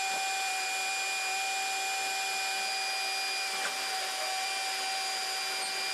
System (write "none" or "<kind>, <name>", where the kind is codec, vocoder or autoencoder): none